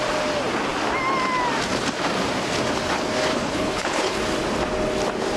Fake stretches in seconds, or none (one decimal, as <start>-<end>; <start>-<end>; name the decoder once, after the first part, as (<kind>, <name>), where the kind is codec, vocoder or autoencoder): 3.3-4.2 (codec, HILCodec)